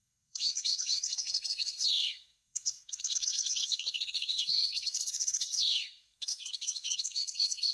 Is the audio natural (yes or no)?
no